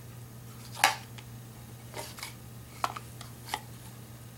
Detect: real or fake real